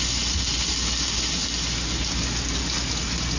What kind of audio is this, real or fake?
real